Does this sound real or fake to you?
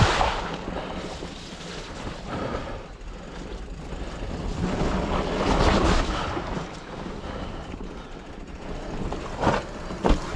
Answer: real